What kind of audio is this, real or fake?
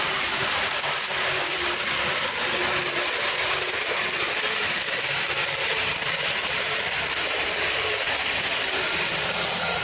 fake